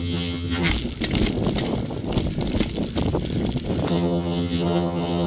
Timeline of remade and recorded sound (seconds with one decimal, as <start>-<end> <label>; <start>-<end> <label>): 0.0-0.7 remade; 0.7-3.9 recorded; 3.9-5.3 remade